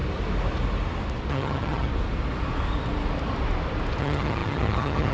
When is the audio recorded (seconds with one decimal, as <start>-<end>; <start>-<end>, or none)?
0.0-1.3; 1.9-4.0